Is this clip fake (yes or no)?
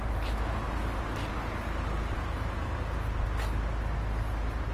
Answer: no